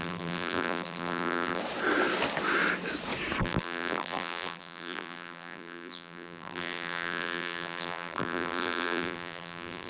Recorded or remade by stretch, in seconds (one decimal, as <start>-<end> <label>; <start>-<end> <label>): 0.0-1.6 remade; 1.6-3.4 recorded; 3.4-9.9 remade